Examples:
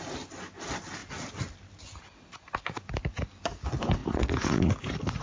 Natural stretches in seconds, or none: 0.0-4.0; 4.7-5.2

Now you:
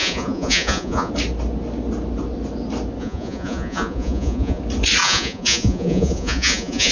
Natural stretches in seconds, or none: 1.1-3.0; 4.6-5.0

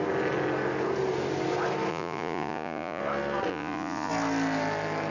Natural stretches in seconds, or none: 0.0-1.9; 3.0-3.5; 4.1-5.1

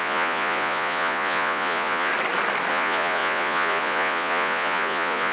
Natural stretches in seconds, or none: 2.1-2.7

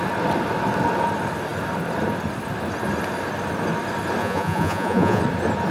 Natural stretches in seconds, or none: 0.0-4.2; 5.2-5.7

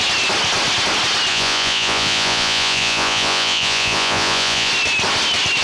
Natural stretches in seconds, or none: 0.0-1.3; 4.7-5.6

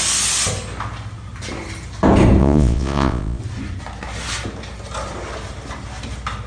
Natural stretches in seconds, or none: 0.0-2.4; 3.4-6.5